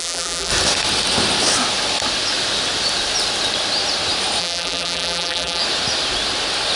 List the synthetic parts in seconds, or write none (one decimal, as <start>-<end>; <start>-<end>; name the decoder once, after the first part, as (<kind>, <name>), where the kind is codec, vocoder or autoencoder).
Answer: 0.0-0.5 (vocoder, BigVGAN v2); 4.4-5.6